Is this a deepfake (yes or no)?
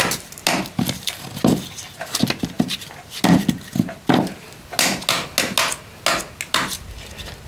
no